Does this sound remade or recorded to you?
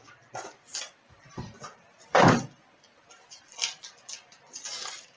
recorded